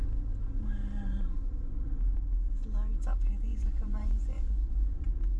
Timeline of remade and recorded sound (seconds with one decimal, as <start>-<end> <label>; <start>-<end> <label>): 0.0-3.5 recorded; 3.5-5.0 remade; 5.0-5.4 recorded